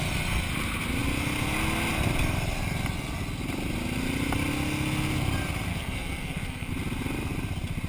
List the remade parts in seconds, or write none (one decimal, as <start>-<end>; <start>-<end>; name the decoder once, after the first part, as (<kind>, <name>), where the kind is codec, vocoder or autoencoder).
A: 5.7-6.7 (codec, SNAC)